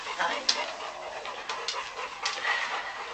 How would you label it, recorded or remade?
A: recorded